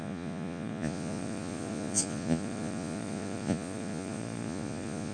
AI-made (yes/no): yes